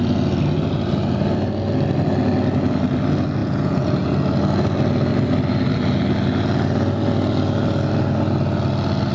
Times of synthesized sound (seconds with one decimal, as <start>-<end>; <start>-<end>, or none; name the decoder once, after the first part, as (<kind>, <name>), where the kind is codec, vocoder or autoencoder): 3.4-4.1 (vocoder, Vocos)